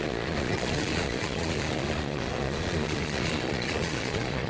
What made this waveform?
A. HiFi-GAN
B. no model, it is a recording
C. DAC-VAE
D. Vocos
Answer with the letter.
D